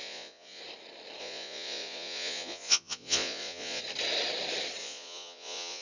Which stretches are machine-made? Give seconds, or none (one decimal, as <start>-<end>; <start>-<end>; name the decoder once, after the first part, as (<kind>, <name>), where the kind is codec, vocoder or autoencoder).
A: 0.0-0.6 (vocoder, Vocos); 1.2-3.8; 4.8-5.8